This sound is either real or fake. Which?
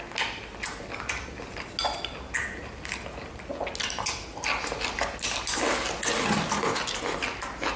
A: real